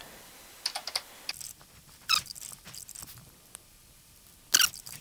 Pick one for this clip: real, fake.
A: real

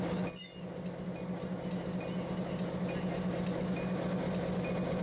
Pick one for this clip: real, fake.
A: real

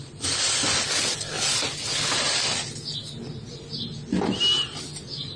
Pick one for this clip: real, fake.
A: real